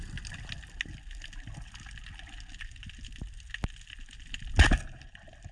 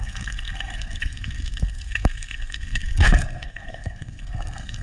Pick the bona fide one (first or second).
first